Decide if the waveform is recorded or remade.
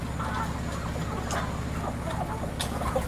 recorded